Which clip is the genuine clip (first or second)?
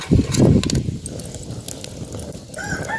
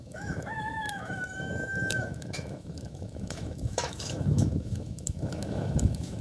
first